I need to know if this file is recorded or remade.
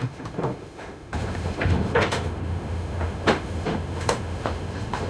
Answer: remade